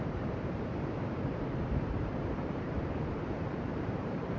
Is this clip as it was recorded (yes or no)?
no